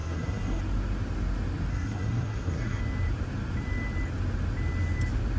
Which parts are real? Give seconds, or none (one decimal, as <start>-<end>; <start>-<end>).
0.6-1.7; 2.8-5.4